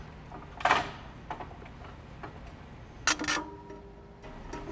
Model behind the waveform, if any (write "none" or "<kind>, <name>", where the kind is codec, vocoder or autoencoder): none